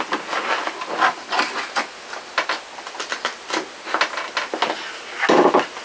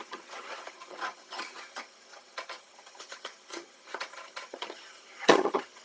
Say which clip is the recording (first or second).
first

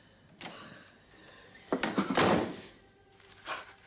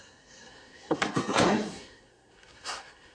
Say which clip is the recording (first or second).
first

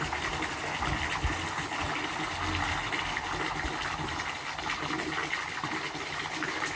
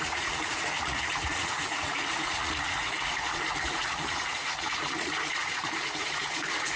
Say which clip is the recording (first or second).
first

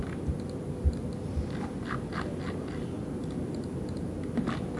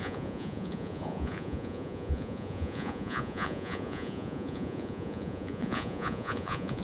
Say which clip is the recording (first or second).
first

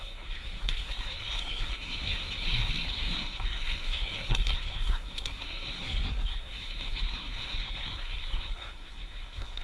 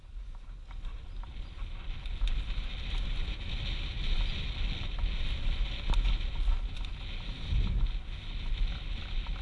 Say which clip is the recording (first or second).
second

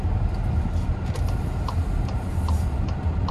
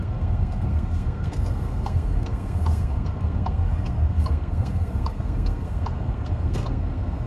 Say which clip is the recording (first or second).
first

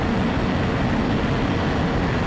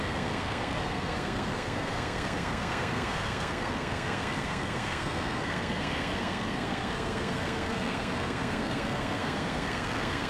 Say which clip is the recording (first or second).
first